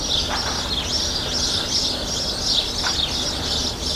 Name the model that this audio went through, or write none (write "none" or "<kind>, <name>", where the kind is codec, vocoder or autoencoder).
none